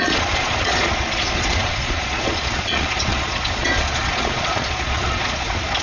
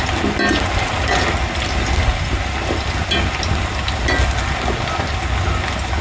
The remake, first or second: first